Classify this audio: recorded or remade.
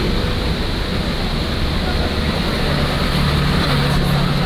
recorded